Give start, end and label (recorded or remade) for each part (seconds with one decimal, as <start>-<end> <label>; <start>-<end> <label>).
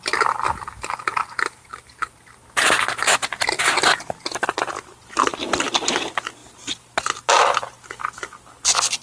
0.0-5.3 recorded; 5.3-5.9 remade; 5.9-6.4 recorded; 6.4-7.2 remade; 7.2-9.0 recorded